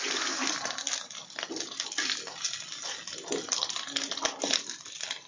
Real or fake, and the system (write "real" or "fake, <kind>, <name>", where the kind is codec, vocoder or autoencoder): real